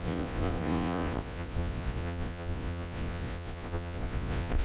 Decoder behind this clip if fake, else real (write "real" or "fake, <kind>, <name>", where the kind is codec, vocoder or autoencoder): fake, vocoder, Vocos